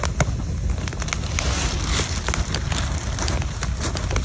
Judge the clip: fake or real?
real